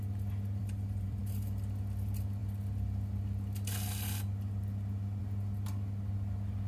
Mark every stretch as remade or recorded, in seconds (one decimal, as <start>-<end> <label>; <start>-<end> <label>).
0.0-0.6 recorded; 0.6-1.2 remade; 1.2-6.7 recorded